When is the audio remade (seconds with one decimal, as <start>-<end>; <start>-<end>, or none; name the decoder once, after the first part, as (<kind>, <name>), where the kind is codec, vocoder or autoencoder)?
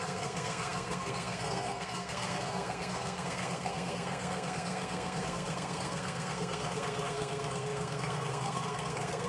0.0-9.3 (codec, SNAC)